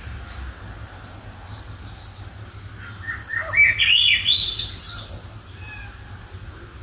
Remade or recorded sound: recorded